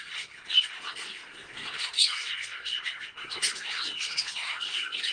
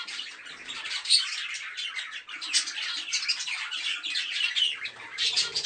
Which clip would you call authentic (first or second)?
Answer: second